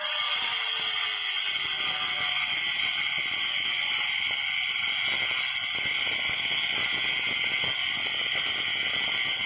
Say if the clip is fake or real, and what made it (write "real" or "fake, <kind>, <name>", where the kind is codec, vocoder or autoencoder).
real